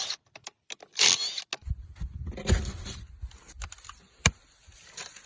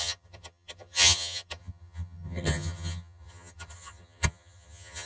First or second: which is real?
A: first